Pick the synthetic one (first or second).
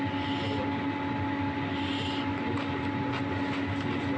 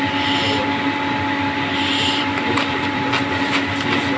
second